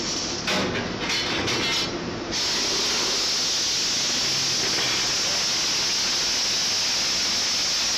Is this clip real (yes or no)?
yes